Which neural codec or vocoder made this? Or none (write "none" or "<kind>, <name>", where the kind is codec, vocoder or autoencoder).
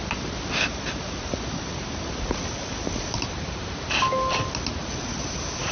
none